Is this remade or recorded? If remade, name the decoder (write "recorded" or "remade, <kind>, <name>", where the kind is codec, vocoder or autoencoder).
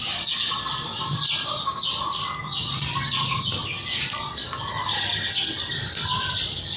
recorded